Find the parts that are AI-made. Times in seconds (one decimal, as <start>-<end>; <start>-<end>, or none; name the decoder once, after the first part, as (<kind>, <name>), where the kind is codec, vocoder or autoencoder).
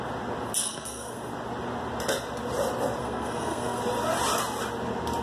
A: 0.6-1.3 (codec, SNAC); 3.0-3.8